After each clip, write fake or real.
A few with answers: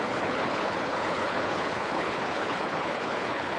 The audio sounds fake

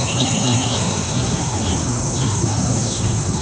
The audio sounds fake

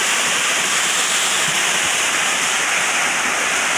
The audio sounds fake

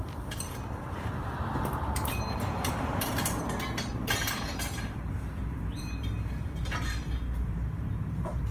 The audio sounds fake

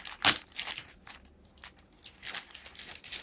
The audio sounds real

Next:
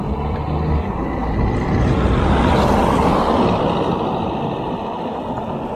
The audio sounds real